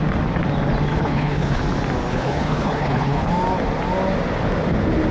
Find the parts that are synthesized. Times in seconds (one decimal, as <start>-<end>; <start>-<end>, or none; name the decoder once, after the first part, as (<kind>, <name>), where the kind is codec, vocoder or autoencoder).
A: 0.9-1.6 (codec, HILCodec); 2.1-3.3